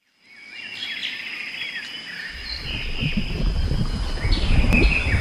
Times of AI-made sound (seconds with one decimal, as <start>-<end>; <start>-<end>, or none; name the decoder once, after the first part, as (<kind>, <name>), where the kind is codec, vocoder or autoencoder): none